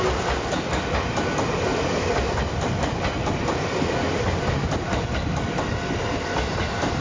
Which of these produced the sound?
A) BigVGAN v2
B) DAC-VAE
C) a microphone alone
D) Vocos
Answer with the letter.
C